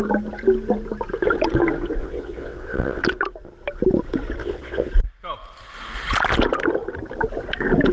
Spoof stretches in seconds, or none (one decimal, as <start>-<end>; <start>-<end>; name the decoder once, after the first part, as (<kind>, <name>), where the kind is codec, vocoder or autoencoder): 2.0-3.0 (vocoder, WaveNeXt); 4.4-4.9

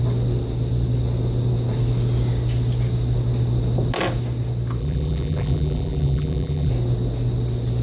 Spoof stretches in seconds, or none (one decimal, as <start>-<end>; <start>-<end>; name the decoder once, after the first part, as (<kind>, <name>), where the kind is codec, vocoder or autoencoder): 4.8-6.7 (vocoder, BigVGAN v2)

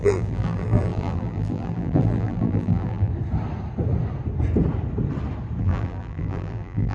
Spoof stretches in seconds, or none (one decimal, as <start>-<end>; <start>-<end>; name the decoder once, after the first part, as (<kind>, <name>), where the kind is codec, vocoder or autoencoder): 0.0-3.1 (vocoder, BigVGAN v2); 5.6-6.9